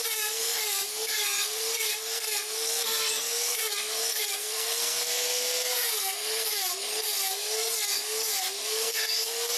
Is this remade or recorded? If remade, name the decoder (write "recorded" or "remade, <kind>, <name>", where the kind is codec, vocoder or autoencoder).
remade, codec, SNAC